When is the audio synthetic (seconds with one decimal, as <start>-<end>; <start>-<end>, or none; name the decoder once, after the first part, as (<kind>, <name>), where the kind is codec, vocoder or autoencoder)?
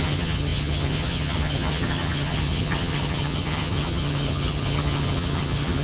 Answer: 0.0-5.8 (vocoder, HiFi-GAN)